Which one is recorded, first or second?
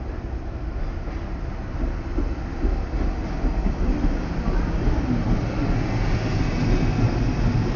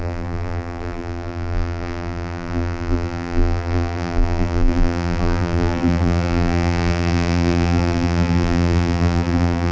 first